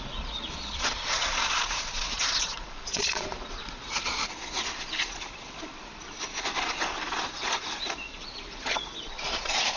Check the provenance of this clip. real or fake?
fake